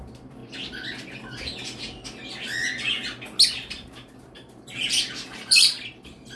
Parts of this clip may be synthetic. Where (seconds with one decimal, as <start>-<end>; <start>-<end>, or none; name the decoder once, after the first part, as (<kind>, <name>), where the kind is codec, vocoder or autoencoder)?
0.0-0.4 (vocoder, BigVGAN v2); 4.2-6.4